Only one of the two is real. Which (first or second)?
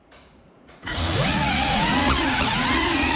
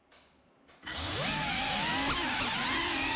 second